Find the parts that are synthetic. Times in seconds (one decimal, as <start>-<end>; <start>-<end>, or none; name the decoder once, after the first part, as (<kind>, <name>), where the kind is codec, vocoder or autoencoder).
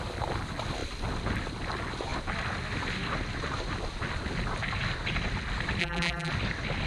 5.8-6.3 (vocoder, BigVGAN v2)